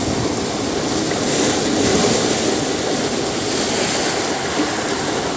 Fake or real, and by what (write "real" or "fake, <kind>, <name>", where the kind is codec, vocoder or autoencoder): real